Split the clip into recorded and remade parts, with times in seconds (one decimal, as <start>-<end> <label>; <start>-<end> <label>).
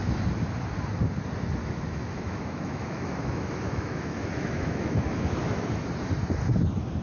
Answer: 0.0-1.6 recorded; 1.6-5.8 remade; 5.8-7.0 recorded